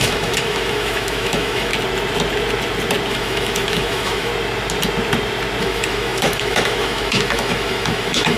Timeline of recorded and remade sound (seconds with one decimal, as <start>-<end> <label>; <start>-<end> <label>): 0.0-1.7 remade; 1.7-3.1 recorded; 3.1-4.3 remade; 4.3-5.6 recorded; 5.6-8.4 remade